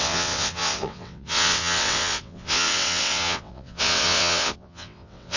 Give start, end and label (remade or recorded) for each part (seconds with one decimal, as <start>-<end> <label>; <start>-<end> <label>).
0.0-5.4 remade